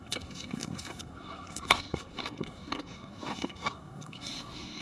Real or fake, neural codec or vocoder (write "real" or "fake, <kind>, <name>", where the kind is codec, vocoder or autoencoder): fake, codec, SNAC